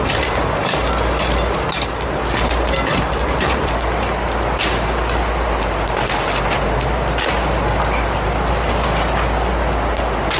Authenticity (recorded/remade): recorded